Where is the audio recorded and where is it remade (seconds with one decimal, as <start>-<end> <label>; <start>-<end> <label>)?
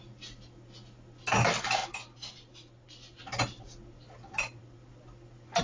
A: 0.0-5.6 recorded